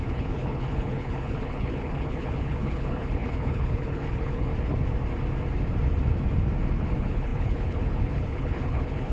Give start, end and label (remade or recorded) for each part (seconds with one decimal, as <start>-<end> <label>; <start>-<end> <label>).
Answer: 0.0-4.5 remade; 4.5-6.7 recorded; 6.7-9.1 remade